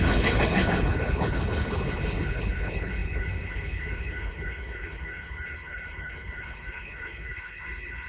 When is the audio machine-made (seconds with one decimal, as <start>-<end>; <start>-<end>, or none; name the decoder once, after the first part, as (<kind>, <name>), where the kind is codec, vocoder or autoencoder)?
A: 0.0-8.1 (codec, HILCodec)